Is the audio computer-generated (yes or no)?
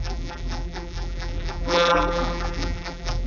yes